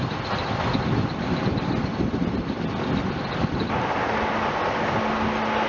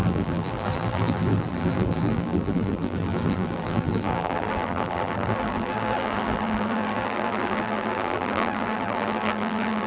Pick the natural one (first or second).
first